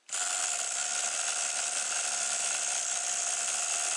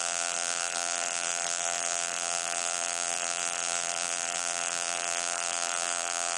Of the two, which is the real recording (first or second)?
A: first